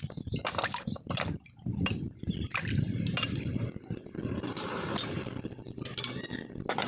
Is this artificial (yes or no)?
no